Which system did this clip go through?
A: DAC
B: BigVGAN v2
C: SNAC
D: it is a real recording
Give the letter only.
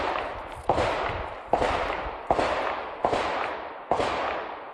D